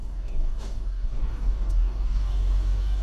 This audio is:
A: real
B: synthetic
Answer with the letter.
B